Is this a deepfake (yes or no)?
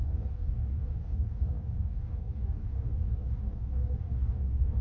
yes